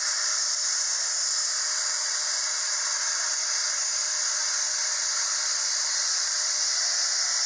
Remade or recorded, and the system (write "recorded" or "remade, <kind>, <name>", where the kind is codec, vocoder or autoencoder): remade, vocoder, BigVGAN v2